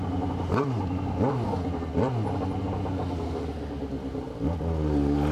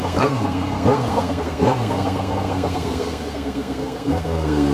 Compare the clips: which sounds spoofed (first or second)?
second